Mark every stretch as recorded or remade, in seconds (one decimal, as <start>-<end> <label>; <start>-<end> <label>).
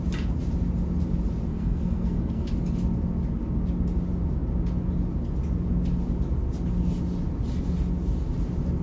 0.0-1.5 recorded; 1.5-2.5 remade; 2.5-8.8 recorded